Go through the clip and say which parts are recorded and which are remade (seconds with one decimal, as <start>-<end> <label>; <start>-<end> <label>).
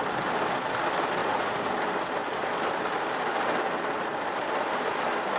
0.0-1.2 recorded; 1.2-1.7 remade; 1.7-5.4 recorded